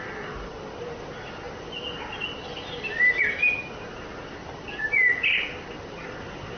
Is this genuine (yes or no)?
yes